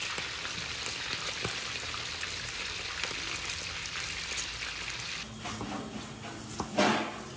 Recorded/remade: recorded